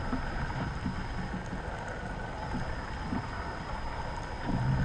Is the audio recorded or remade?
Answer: recorded